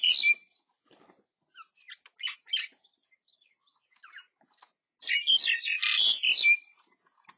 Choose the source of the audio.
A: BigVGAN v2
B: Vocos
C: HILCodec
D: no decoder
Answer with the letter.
D